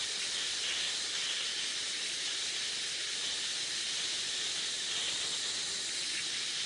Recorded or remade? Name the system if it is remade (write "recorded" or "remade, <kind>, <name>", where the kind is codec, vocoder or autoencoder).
recorded